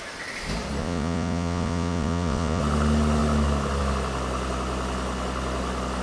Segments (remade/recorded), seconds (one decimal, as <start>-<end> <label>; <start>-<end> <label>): 0.0-0.8 recorded; 0.8-2.6 remade; 2.6-6.0 recorded